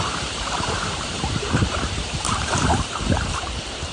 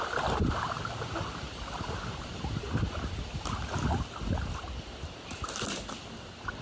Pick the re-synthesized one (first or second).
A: first